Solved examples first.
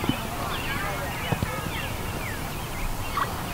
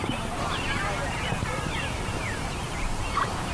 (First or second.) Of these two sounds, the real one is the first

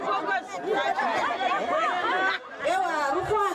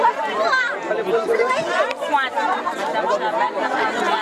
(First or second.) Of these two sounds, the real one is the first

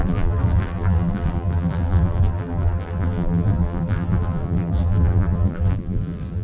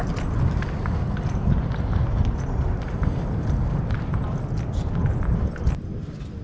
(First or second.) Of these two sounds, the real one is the second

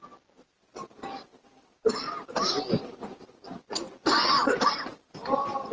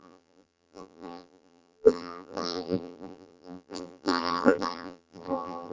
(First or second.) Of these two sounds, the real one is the first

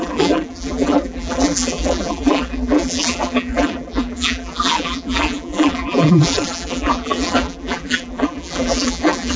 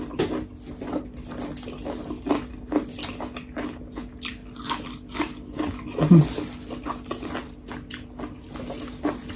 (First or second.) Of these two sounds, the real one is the second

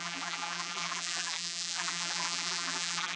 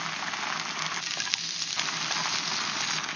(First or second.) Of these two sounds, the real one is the second